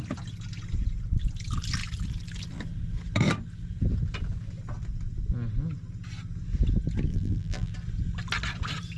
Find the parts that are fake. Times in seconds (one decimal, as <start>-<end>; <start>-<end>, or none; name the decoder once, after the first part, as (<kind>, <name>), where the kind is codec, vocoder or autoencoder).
7.1-7.7 (vocoder, BigVGAN v2)